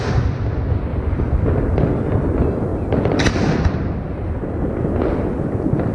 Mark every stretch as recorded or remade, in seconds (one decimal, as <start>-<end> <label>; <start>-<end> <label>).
0.0-0.9 recorded; 0.9-1.6 remade; 1.6-5.9 recorded